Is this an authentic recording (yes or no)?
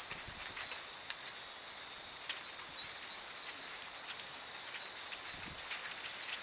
yes